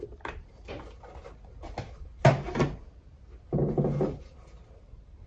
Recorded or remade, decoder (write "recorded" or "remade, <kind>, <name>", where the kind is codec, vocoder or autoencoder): recorded